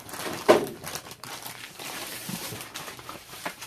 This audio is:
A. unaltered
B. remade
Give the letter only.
B